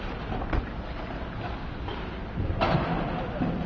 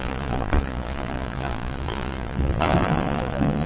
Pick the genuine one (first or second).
first